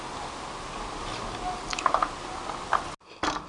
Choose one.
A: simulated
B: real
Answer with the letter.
B